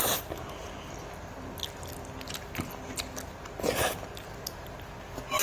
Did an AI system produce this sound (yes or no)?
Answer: no